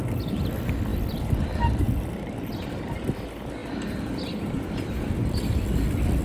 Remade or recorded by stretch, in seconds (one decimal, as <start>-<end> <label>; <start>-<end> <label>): 0.0-6.2 recorded